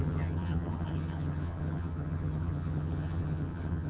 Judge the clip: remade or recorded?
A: remade